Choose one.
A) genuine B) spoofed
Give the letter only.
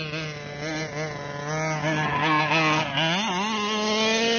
A